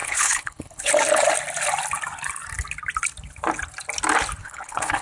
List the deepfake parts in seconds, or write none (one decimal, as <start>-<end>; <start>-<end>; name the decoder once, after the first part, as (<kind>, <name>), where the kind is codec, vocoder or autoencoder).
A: 0.0-0.9 (codec, HILCodec); 4.4-5.0